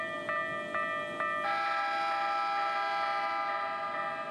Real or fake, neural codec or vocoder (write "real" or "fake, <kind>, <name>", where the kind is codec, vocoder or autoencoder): real